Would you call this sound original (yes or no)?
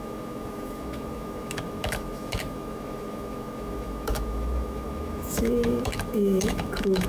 no